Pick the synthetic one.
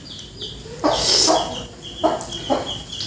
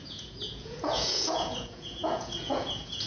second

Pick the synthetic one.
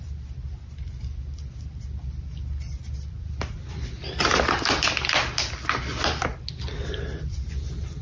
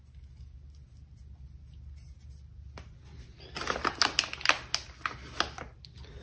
first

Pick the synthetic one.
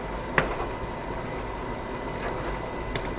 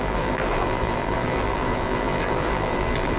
second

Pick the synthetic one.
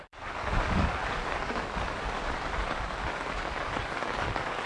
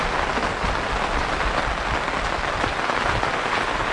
first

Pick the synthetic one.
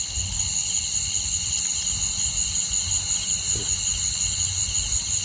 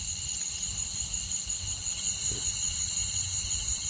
second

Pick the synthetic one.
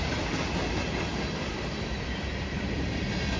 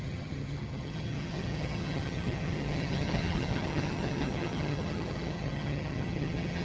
second